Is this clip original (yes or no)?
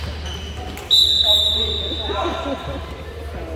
yes